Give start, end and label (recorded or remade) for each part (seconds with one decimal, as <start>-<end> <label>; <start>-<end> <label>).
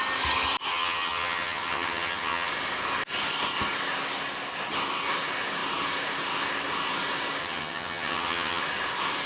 0.0-0.7 recorded; 0.7-2.5 remade; 2.5-7.4 recorded; 7.4-8.6 remade; 8.6-9.3 recorded